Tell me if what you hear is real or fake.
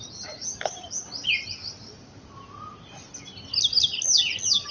real